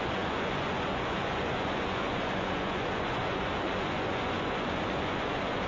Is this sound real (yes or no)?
no